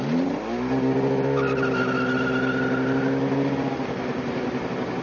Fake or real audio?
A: real